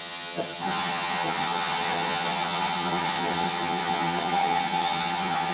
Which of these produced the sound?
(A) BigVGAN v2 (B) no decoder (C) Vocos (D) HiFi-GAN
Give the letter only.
D